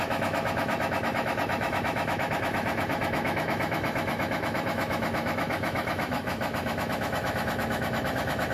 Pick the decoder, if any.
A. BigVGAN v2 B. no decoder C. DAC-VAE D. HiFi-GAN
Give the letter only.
C